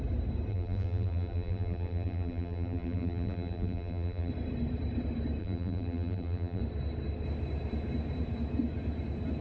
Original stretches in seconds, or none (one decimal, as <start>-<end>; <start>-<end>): 0.0-0.5; 4.3-5.4; 6.6-9.4